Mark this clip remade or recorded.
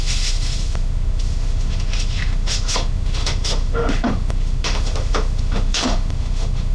remade